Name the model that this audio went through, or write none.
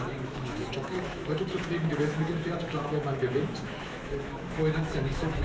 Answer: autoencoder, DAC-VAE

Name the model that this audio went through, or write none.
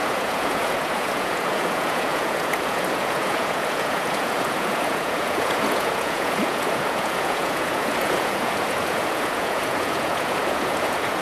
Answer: vocoder, Vocos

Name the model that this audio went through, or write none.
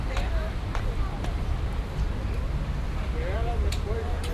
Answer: none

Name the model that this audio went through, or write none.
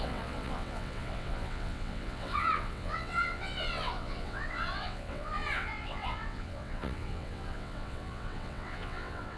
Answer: vocoder, WaveNeXt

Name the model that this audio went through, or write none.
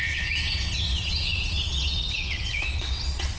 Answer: vocoder, WaveNeXt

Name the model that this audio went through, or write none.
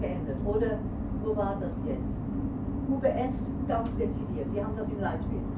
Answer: none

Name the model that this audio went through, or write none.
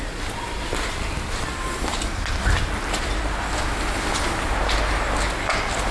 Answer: none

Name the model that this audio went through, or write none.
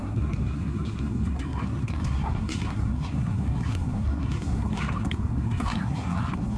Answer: codec, SNAC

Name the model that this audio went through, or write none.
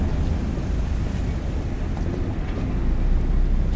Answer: none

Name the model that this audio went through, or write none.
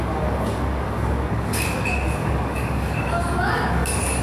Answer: codec, DAC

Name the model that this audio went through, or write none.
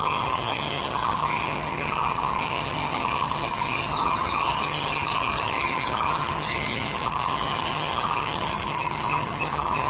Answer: vocoder, HiFi-GAN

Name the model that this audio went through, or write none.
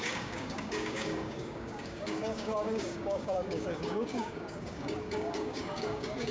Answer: codec, DAC